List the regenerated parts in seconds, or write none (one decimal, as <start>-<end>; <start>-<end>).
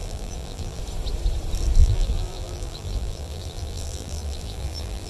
0.0-0.8; 1.8-5.1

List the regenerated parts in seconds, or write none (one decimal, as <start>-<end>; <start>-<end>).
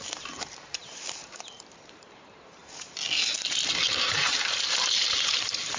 0.0-2.6; 4.0-5.8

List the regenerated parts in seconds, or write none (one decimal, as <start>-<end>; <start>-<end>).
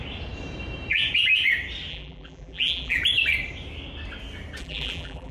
1.9-3.0; 4.6-5.3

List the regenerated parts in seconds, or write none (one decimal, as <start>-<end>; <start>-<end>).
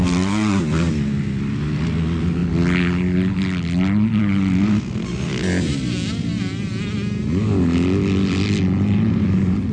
none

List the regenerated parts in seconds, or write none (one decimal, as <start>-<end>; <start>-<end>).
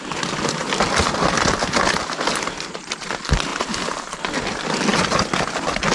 3.5-4.1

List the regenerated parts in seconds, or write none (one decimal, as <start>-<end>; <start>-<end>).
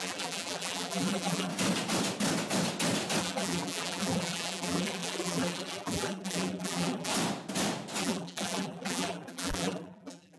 0.0-1.5; 3.2-7.1; 8.0-10.4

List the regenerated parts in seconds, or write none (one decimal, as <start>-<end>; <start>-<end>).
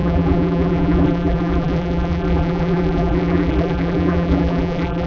0.0-5.1